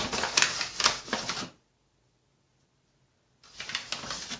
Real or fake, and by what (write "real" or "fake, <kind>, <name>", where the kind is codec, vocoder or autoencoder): real